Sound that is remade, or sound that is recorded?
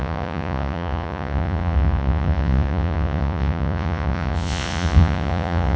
remade